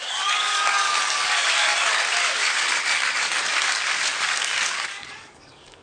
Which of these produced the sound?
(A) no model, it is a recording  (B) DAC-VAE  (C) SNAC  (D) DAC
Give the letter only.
D